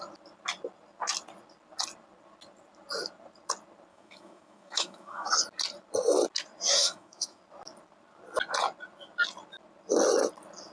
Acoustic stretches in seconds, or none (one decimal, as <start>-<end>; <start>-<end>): 0.0-3.9; 5.3-6.8; 7.4-10.7